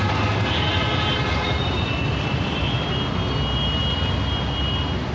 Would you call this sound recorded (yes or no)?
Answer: yes